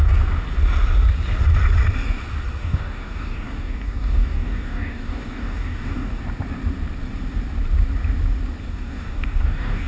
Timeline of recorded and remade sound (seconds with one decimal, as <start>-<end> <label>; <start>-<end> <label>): 0.0-2.6 recorded; 2.6-6.2 remade; 6.2-8.6 recorded; 8.6-9.9 remade